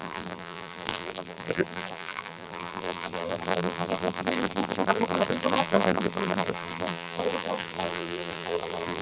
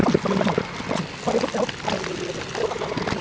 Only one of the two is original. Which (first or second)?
second